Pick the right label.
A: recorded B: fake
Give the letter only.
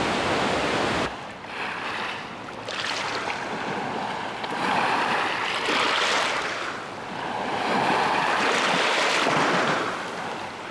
A